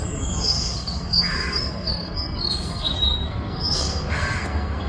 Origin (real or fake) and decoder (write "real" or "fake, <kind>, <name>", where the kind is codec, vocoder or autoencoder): fake, codec, SNAC